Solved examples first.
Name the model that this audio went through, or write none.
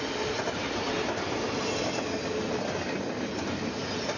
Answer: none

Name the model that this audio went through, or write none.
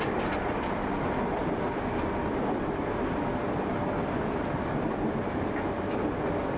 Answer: none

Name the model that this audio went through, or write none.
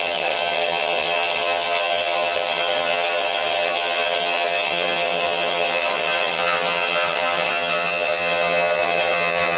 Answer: vocoder, HiFi-GAN